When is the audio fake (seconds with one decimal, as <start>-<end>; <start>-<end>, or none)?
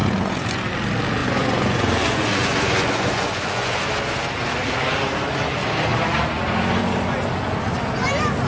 0.0-0.6; 1.2-3.8